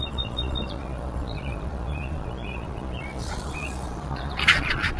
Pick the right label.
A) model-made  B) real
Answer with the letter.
A